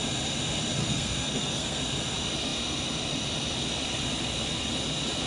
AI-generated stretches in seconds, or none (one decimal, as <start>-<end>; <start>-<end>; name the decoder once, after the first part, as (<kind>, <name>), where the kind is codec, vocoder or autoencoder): 0.8-1.8 (codec, SNAC)